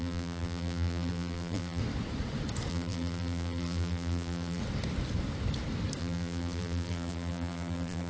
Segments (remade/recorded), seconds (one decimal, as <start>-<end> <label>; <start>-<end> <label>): 0.0-1.8 remade; 1.8-2.7 recorded; 2.7-4.6 remade; 4.6-6.0 recorded; 6.0-8.1 remade